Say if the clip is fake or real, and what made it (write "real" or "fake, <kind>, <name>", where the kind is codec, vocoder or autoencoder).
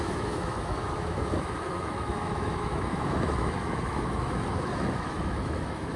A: fake, autoencoder, DAC-VAE